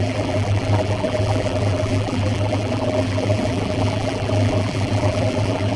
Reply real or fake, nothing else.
fake